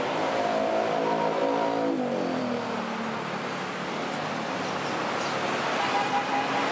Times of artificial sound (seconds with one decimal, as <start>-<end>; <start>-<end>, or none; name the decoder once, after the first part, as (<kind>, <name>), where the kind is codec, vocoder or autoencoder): none